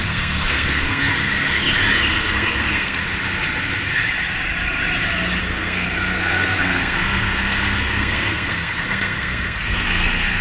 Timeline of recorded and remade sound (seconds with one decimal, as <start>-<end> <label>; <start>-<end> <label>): 0.0-1.1 remade; 1.1-2.1 recorded; 2.1-3.0 remade; 3.0-5.4 recorded; 5.4-10.4 remade